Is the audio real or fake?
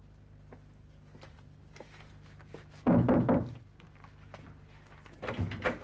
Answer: real